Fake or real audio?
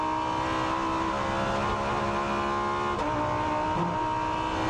real